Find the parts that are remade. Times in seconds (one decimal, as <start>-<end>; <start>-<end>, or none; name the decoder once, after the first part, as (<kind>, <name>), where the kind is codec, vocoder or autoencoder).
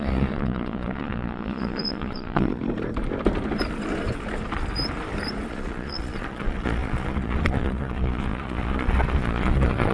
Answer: 0.0-2.6 (vocoder, Vocos); 5.5-9.9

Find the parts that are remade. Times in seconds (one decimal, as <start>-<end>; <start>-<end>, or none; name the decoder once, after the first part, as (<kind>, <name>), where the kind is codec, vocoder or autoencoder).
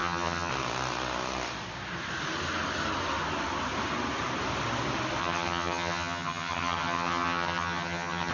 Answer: 0.0-0.5 (vocoder, HiFi-GAN); 5.2-8.3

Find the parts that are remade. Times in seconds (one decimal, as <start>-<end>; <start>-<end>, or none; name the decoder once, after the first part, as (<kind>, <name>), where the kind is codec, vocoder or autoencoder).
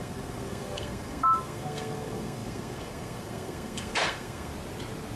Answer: 0.0-4.5 (codec, SNAC)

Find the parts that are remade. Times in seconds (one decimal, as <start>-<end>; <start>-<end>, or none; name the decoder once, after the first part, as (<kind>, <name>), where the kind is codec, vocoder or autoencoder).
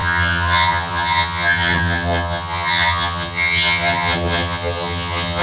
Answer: 0.0-5.4 (vocoder, HiFi-GAN)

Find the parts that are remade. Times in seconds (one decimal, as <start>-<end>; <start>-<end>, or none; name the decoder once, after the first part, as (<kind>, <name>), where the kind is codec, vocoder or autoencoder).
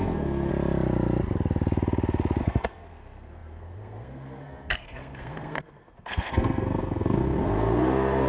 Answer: 0.0-0.5 (codec, SNAC); 2.4-8.3